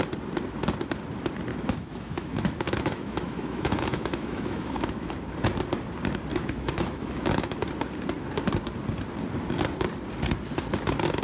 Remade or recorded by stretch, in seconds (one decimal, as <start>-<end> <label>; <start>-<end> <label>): 0.0-1.5 recorded; 1.5-5.1 remade; 5.1-6.3 recorded; 6.3-7.6 remade; 7.6-11.2 recorded